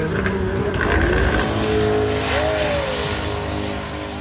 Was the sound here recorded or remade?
recorded